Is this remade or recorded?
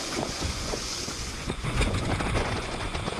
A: remade